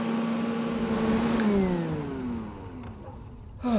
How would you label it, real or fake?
real